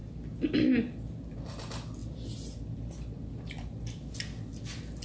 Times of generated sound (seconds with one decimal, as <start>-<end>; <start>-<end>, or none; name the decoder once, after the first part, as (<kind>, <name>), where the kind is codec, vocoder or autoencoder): none

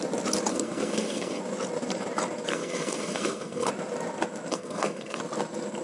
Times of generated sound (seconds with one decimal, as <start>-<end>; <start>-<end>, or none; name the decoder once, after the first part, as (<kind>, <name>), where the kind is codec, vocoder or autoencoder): 0.5-1.4 (codec, SNAC); 2.5-3.7; 4.5-5.2

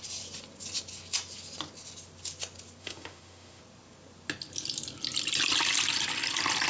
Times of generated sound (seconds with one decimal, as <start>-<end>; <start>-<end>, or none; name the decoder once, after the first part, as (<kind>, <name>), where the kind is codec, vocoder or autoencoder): 2.8-3.6 (autoencoder, DAC-VAE)

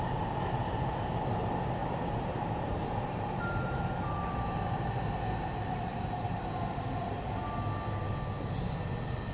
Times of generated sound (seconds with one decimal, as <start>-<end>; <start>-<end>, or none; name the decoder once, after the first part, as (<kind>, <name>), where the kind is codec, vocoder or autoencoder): 1.8-4.4 (vocoder, BigVGAN v2); 5.9-6.5

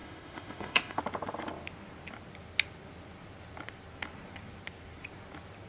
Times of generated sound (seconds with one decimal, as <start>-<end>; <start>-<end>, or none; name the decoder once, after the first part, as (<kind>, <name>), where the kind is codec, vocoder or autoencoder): 0.0-1.0 (autoencoder, DAC-VAE)

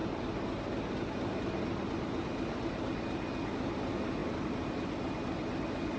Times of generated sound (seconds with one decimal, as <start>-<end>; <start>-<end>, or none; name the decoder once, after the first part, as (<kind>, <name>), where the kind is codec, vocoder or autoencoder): none

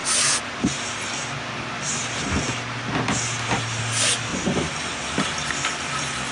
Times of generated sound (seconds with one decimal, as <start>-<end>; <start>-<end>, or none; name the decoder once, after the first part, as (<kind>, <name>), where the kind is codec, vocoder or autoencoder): none

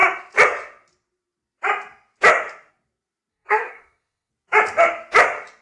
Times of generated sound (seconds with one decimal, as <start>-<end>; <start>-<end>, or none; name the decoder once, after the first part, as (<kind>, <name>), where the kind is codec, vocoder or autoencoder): 3.3-4.3 (codec, SNAC)